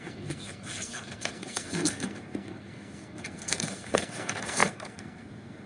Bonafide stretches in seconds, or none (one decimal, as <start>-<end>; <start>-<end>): none